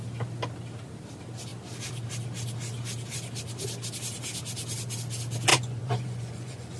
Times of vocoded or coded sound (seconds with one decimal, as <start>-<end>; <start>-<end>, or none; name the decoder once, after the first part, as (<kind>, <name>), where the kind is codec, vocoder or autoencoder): 5.5-6.8 (vocoder, Vocos)